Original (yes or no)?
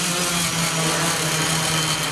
yes